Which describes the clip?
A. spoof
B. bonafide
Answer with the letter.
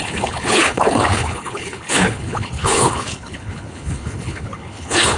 A